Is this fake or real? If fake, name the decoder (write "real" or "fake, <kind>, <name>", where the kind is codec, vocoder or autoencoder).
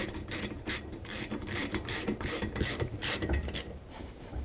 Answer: fake, vocoder, BigVGAN v2